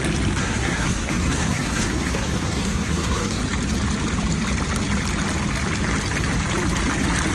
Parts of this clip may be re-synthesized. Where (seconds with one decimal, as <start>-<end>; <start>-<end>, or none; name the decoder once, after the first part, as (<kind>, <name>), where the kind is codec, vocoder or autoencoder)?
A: 0.4-3.4 (codec, SNAC)